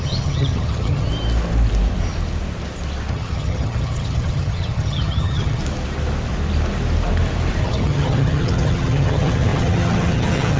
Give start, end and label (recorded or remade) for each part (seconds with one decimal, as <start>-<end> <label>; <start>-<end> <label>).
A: 0.0-1.1 remade; 1.1-3.1 recorded; 3.1-5.6 remade; 5.6-7.6 recorded; 7.6-10.6 remade

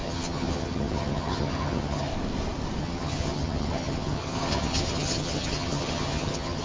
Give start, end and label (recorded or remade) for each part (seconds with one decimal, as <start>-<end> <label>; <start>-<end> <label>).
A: 0.0-2.1 remade; 2.1-2.8 recorded; 2.8-6.6 remade

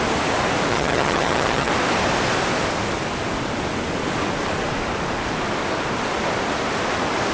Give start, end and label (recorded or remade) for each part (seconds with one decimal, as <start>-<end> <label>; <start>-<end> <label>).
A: 0.0-0.7 recorded; 0.7-1.7 remade; 1.7-7.3 recorded

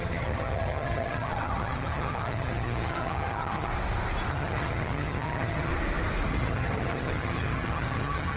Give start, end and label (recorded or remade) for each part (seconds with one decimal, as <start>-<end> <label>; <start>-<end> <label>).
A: 0.0-3.7 remade; 3.7-4.3 recorded; 4.3-5.7 remade; 5.7-6.3 recorded; 6.3-8.4 remade

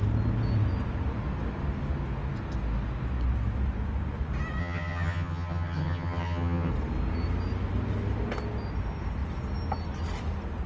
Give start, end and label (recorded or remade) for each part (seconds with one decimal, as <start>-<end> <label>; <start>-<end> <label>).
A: 0.0-4.6 recorded; 4.6-6.7 remade; 6.7-10.7 recorded